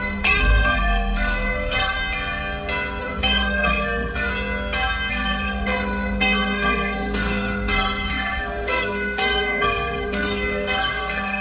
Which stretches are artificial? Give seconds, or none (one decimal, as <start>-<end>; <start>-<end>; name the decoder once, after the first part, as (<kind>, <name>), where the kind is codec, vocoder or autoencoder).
0.0-2.0 (codec, SNAC); 3.0-4.3; 5.1-11.4